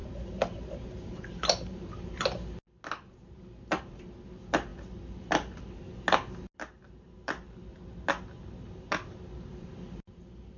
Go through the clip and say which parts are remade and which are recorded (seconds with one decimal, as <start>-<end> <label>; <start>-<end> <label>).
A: 0.0-10.6 recorded